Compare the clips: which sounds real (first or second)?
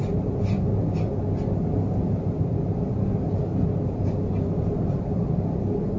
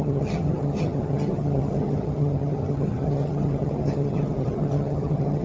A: first